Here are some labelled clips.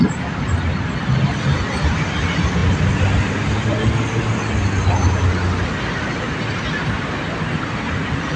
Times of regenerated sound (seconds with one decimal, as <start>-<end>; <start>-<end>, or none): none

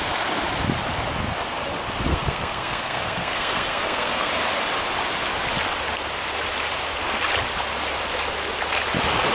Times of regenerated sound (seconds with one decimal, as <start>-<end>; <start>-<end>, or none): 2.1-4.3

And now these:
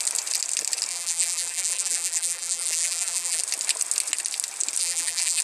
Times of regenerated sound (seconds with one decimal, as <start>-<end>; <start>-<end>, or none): 0.9-3.4; 4.8-5.4

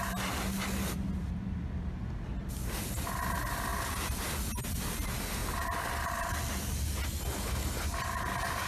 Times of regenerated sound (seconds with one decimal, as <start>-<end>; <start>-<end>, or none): none